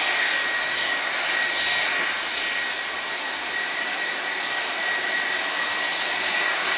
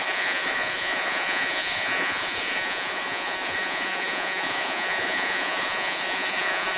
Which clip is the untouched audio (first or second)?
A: first